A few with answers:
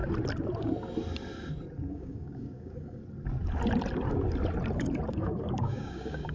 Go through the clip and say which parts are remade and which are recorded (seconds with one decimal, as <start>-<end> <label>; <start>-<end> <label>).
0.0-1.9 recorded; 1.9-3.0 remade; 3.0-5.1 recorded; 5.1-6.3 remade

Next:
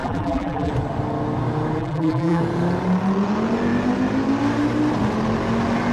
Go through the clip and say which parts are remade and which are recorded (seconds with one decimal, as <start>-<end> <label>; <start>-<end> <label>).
0.0-0.7 remade; 0.7-1.8 recorded; 1.8-2.4 remade; 2.4-5.9 recorded

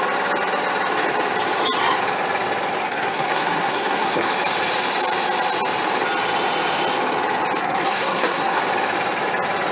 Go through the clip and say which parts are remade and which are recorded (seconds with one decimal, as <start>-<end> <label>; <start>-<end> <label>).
0.0-2.8 recorded; 2.8-4.3 remade; 4.3-7.6 recorded; 7.6-8.6 remade; 8.6-9.7 recorded